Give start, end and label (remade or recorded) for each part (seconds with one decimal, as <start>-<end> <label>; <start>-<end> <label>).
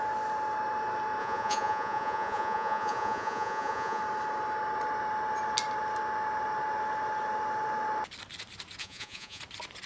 0.0-1.2 recorded; 1.2-4.0 remade; 4.0-8.8 recorded; 8.8-9.4 remade; 9.4-9.9 recorded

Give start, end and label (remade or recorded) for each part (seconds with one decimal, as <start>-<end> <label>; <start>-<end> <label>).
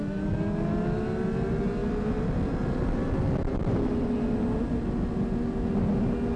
0.0-6.4 recorded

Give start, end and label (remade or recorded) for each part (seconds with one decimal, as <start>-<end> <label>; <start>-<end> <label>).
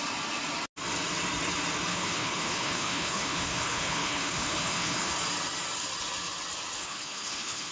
0.0-1.9 recorded; 1.9-5.1 remade; 5.1-6.8 recorded; 6.8-7.7 remade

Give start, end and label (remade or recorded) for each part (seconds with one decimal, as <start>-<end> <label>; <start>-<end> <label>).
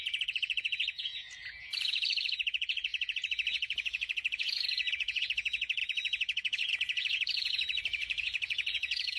0.0-9.2 remade